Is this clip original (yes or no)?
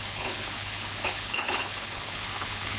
no